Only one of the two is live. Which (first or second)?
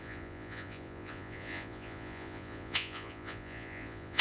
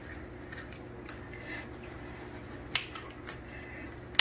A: second